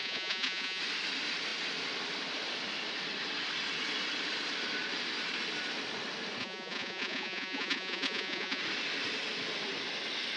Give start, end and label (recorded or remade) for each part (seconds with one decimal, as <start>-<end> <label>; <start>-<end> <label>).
0.0-0.8 remade; 0.8-6.4 recorded; 6.4-8.6 remade; 8.6-10.4 recorded